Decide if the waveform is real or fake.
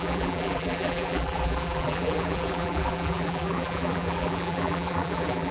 fake